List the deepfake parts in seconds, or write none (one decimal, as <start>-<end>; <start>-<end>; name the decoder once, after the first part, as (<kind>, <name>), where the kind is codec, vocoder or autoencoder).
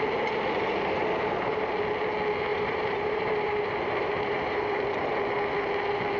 2.5-5.2 (vocoder, BigVGAN v2)